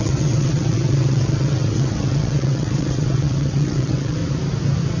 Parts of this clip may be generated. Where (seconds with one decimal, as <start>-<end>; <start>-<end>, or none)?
0.0-4.2